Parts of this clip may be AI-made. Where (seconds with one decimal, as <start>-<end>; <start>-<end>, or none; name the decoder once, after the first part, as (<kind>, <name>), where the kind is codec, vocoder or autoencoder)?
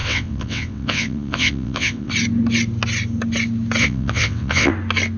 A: 0.0-2.1 (vocoder, WaveNeXt); 3.8-4.7